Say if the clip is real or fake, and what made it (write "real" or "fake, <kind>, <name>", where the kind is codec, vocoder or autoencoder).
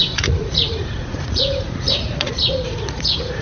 fake, vocoder, Vocos